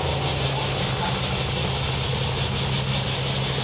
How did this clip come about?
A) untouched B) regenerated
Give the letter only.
A